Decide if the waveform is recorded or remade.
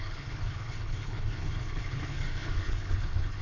remade